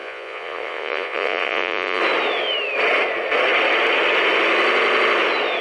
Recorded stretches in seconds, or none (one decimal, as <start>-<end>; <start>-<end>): 2.0-5.6